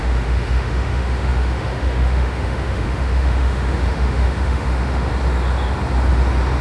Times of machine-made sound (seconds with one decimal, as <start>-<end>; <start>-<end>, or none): 0.0-5.1